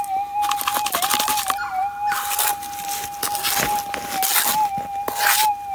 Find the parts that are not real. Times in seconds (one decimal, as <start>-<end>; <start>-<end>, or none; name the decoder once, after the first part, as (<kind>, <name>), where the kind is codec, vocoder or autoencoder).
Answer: none